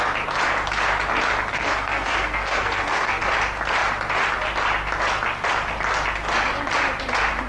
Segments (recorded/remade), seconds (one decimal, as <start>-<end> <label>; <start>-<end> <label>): 0.0-1.5 recorded; 1.5-3.2 remade; 3.2-7.5 recorded

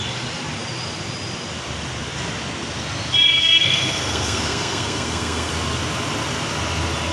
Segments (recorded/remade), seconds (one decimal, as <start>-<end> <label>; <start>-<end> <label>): 0.0-3.3 recorded; 3.3-5.5 remade; 5.5-7.1 recorded

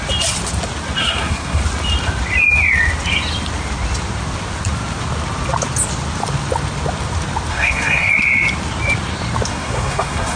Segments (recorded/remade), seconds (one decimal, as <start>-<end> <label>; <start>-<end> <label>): 0.0-1.0 recorded; 1.0-1.6 remade; 1.6-7.5 recorded; 7.5-8.1 remade; 8.1-9.5 recorded; 9.5-10.4 remade

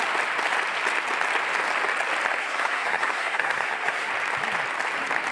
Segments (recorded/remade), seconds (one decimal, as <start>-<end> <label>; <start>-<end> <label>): 0.0-2.4 recorded; 2.4-4.1 remade; 4.1-5.3 recorded

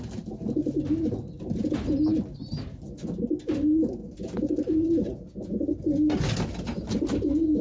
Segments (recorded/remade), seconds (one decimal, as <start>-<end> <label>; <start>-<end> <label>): 0.0-7.6 recorded

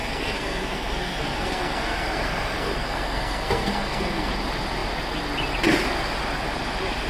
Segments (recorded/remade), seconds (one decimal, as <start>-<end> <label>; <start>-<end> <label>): 0.0-4.3 remade; 4.3-7.1 recorded